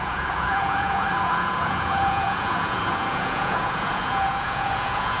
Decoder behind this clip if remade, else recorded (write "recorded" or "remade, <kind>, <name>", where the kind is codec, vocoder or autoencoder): remade, vocoder, Vocos